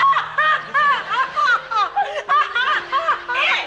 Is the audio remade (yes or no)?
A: no